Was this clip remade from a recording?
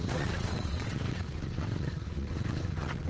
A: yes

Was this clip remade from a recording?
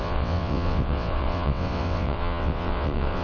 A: yes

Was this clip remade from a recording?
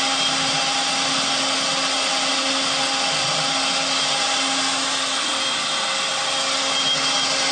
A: no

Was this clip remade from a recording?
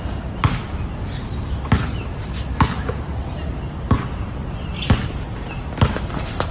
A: no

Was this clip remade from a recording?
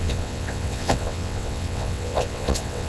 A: yes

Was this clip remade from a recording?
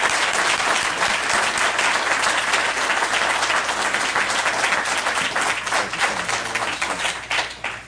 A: no